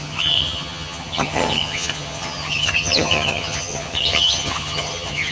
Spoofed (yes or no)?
yes